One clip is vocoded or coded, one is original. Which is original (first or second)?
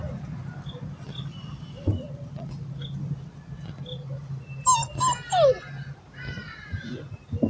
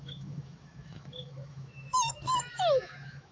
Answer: first